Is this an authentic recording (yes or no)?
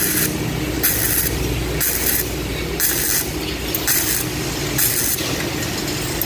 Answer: yes